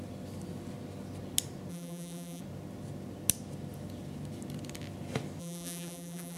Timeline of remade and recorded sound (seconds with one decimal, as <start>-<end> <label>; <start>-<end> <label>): 0.0-1.7 recorded; 1.7-2.4 remade; 2.4-5.4 recorded; 5.4-6.4 remade